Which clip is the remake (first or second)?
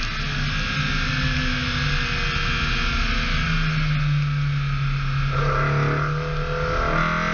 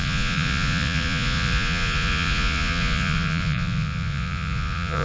second